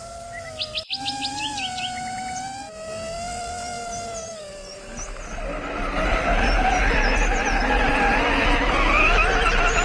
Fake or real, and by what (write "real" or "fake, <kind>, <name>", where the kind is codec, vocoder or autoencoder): real